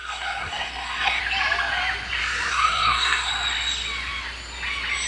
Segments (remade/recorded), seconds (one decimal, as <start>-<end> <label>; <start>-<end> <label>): 0.0-1.2 remade; 1.2-2.5 recorded; 2.5-3.3 remade; 3.3-5.1 recorded